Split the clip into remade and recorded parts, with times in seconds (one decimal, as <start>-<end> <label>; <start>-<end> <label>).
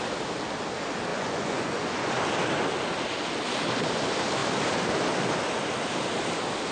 0.0-1.1 recorded; 1.1-2.1 remade; 2.1-6.7 recorded